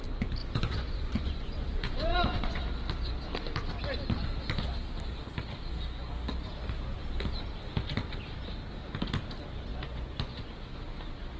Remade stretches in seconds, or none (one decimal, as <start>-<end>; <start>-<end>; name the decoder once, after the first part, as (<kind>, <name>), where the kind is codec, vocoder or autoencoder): 0.4-2.6 (vocoder, Vocos); 9.7-10.5